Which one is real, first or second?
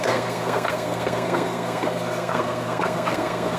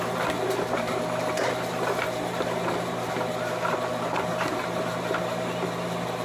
second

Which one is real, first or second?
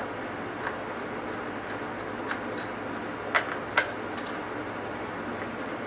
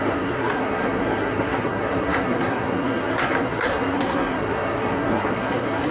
first